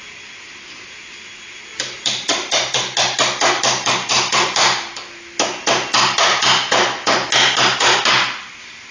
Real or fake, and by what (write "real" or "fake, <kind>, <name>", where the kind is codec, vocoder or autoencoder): real